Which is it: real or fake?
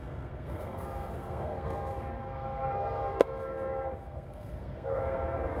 fake